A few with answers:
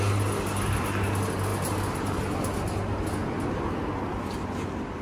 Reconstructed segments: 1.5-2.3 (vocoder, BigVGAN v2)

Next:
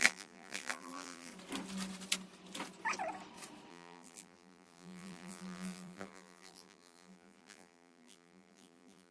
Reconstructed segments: 0.0-1.3 (vocoder, BigVGAN v2); 3.7-9.1